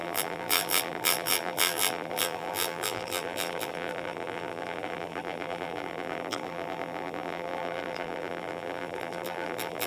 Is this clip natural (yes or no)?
no